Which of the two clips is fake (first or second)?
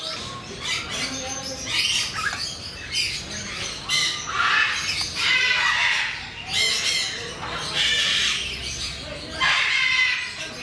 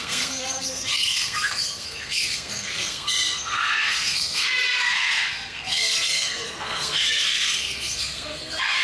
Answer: second